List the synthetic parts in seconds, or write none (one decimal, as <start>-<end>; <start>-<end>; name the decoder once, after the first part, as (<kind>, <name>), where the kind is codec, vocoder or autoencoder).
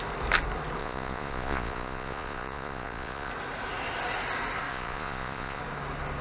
0.8-3.3 (vocoder, Vocos); 4.7-5.6